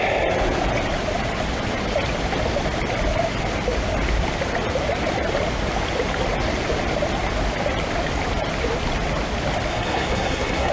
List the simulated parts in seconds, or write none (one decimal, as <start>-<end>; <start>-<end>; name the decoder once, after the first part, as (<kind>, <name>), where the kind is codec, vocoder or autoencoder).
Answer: 9.7-10.7 (codec, SNAC)

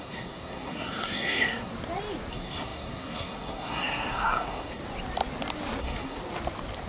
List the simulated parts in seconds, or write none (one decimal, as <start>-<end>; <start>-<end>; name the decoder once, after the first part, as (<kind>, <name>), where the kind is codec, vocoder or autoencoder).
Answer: 0.0-1.7 (codec, SNAC); 2.3-4.8; 5.8-6.2

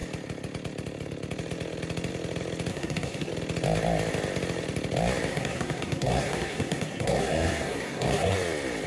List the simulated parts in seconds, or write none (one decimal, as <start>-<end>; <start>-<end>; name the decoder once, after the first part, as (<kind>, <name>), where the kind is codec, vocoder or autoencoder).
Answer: 2.7-3.3 (codec, SNAC); 5.3-8.3

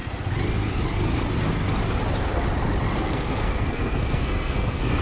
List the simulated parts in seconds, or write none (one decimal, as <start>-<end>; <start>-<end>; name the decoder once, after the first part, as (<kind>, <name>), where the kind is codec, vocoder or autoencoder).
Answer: 3.0-5.0 (codec, SNAC)

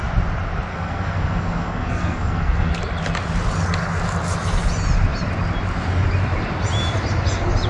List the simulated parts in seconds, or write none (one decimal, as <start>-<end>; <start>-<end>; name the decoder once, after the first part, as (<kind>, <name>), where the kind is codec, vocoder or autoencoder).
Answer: 0.7-2.7 (codec, SNAC)